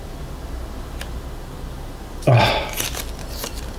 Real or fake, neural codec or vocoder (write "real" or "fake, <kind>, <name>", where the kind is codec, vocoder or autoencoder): real